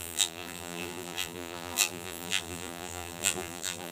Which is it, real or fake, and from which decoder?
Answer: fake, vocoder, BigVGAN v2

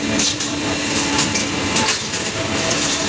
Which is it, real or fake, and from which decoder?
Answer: fake, vocoder, BigVGAN v2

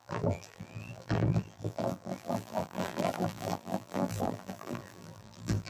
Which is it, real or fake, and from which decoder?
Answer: fake, vocoder, BigVGAN v2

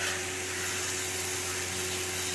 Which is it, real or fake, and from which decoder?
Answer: real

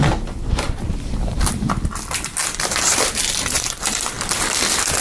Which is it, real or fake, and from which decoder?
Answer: real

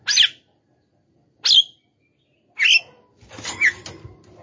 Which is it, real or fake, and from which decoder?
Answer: real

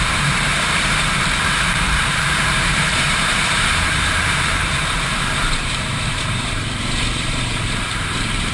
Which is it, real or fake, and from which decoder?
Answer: fake, vocoder, BigVGAN v2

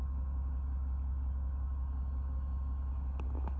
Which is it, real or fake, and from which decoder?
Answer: real